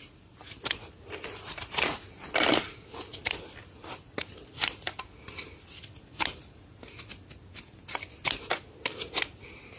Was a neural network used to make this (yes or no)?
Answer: no